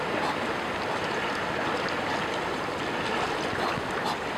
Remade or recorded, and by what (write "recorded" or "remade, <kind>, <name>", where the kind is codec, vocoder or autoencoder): recorded